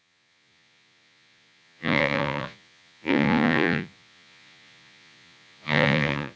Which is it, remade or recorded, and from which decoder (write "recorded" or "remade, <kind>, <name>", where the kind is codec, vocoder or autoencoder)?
remade, vocoder, Vocos